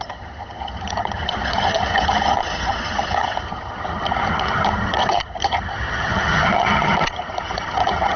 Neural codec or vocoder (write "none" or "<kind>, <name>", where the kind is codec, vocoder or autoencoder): vocoder, HiFi-GAN